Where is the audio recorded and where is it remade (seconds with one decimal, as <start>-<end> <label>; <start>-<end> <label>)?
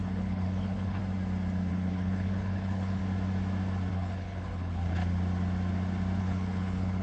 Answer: 0.0-1.0 remade; 1.0-1.7 recorded; 1.7-3.0 remade; 3.0-3.9 recorded; 3.9-5.0 remade; 5.0-6.2 recorded; 6.2-7.0 remade